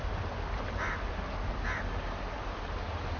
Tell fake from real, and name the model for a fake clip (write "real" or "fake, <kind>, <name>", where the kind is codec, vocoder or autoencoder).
real